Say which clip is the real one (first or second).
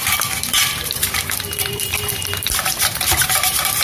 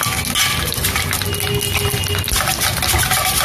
second